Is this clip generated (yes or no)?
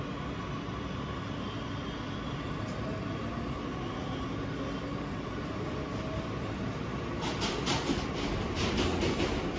no